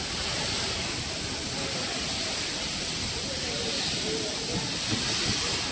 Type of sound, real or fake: real